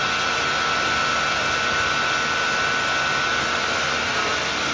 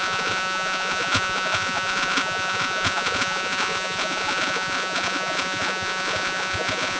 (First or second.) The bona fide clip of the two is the first